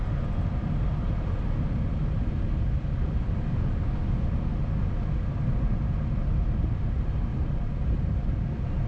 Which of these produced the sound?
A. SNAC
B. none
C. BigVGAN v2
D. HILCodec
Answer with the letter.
B